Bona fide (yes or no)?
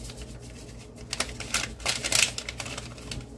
yes